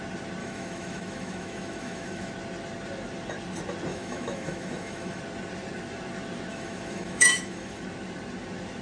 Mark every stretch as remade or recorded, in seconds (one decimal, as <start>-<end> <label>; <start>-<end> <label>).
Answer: 0.0-0.4 recorded; 0.4-2.3 remade; 2.3-3.9 recorded; 3.9-5.2 remade; 5.2-6.5 recorded; 6.5-7.8 remade; 7.8-8.8 recorded